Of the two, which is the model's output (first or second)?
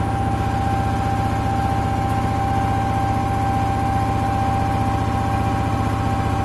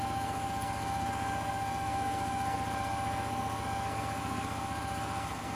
second